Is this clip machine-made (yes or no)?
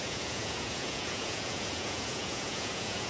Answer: yes